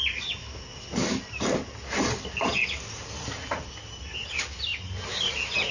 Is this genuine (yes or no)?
yes